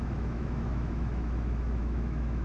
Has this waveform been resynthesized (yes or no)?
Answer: yes